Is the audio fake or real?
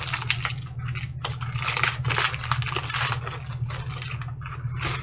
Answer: real